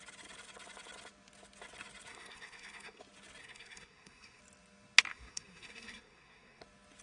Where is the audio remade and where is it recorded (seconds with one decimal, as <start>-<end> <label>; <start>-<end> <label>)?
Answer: 0.0-2.1 recorded; 2.1-3.0 remade; 3.0-3.4 recorded; 3.4-4.4 remade; 4.4-5.1 recorded; 5.1-6.6 remade; 6.6-7.0 recorded